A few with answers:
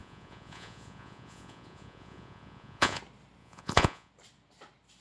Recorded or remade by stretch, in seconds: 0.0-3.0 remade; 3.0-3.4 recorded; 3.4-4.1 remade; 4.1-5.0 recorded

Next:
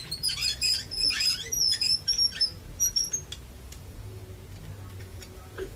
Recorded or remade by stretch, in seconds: 0.0-1.9 remade; 1.9-3.5 recorded; 3.5-4.2 remade; 4.2-5.0 recorded; 5.0-5.8 remade

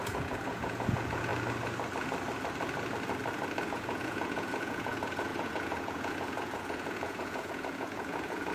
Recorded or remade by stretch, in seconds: 0.0-1.3 remade; 1.3-3.6 recorded; 3.6-8.5 remade

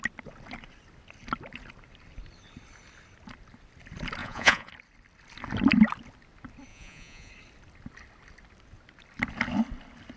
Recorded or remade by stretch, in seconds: 0.0-4.2 recorded; 4.2-4.7 remade; 4.7-6.7 recorded; 6.7-7.3 remade; 7.3-10.2 recorded

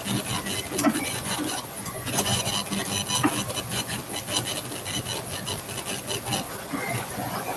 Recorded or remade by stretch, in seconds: 0.0-1.0 recorded; 1.0-2.5 remade; 2.5-3.6 recorded; 3.6-4.0 remade; 4.0-6.6 recorded; 6.6-7.6 remade

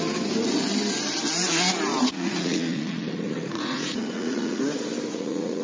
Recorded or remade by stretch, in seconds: 0.0-1.9 recorded; 1.9-4.6 remade; 4.6-5.1 recorded; 5.1-5.6 remade

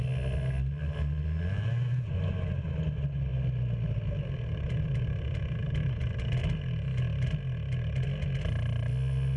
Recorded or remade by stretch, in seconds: 0.0-9.4 recorded

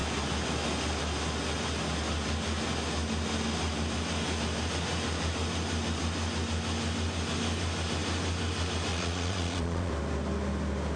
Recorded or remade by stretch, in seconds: 0.0-8.9 recorded; 8.9-9.9 remade; 9.9-11.0 recorded